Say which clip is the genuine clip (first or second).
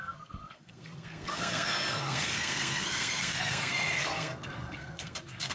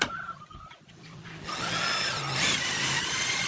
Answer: second